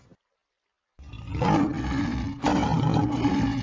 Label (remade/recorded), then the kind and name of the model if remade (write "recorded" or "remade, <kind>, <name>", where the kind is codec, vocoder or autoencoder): recorded